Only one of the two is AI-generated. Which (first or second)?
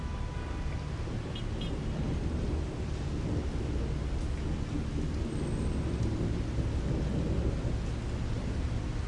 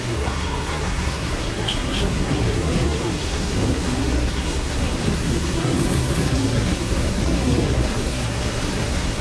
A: second